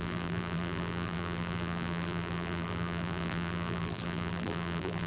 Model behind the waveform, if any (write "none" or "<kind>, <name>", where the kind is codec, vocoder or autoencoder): vocoder, BigVGAN v2